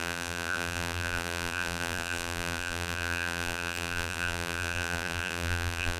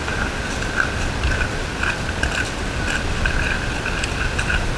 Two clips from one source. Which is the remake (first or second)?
first